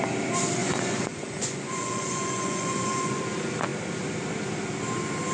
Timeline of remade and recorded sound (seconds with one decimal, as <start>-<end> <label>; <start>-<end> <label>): 0.0-0.6 recorded; 0.6-3.2 remade; 3.2-5.3 recorded